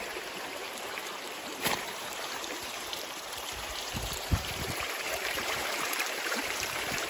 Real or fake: fake